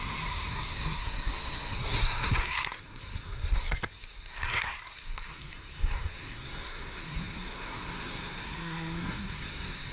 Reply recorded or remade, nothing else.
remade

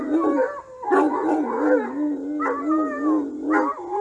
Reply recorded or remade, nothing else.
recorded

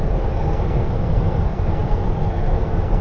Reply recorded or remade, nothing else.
remade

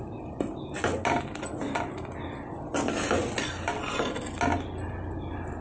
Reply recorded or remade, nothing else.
recorded